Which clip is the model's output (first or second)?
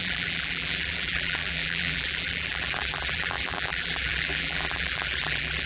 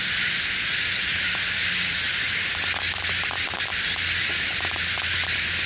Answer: first